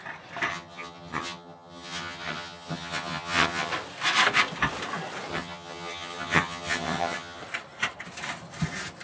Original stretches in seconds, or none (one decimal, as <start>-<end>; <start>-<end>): 0.0-0.5; 3.7-5.3; 7.4-9.0